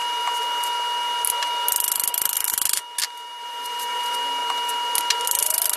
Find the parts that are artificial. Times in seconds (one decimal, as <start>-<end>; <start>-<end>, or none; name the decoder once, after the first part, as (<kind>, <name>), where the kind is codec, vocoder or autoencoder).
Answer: 3.3-4.0 (vocoder, BigVGAN v2)